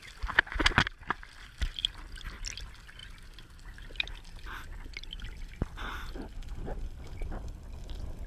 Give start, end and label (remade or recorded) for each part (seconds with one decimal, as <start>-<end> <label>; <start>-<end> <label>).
0.0-8.3 recorded